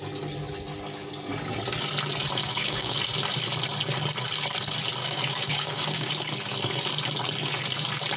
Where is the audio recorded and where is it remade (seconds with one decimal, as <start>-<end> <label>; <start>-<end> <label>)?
0.0-2.4 recorded; 2.4-3.0 remade; 3.0-5.0 recorded; 5.0-6.1 remade; 6.1-8.2 recorded